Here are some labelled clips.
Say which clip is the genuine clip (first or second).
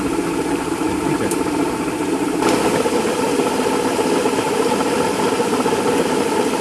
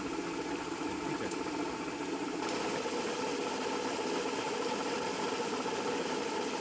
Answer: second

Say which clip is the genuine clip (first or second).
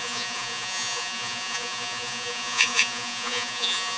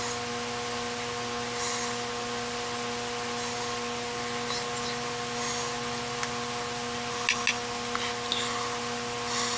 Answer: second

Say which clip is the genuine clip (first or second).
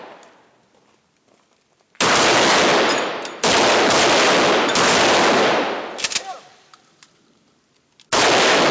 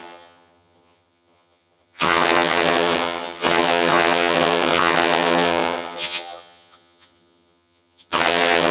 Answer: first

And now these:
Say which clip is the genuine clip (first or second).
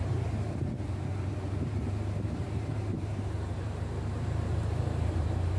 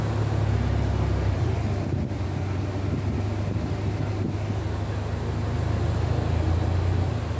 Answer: second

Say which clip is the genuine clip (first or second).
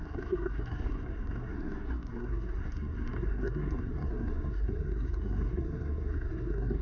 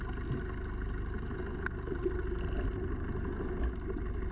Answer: second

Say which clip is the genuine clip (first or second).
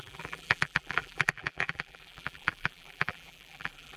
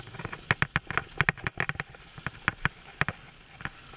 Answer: second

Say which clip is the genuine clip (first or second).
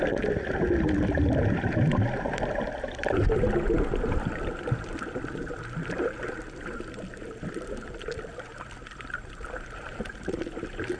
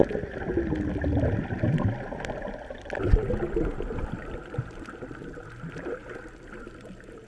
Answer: second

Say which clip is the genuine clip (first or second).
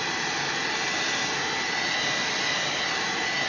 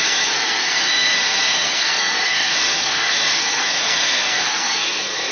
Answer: first